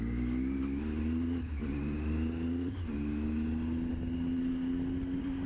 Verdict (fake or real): real